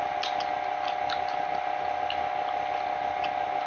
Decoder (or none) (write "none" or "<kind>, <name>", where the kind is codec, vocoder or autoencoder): none